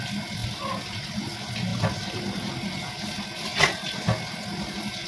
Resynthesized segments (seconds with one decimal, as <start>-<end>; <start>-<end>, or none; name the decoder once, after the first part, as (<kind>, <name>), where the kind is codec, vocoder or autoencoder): none